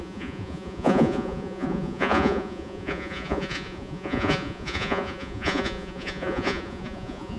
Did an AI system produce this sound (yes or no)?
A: yes